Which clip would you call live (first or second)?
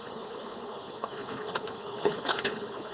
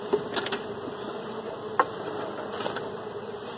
second